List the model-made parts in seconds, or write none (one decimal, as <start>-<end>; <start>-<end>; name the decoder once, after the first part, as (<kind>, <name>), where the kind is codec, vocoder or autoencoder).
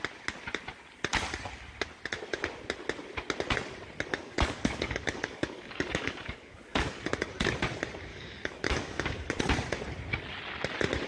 4.1-7.3 (codec, DAC); 8.1-9.4